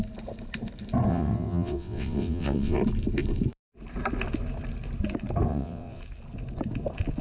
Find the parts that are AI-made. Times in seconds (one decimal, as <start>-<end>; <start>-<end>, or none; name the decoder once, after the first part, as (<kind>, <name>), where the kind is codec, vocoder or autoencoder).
1.1-2.8 (vocoder, WaveNeXt); 5.5-6.0